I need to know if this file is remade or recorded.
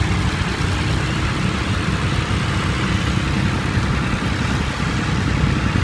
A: recorded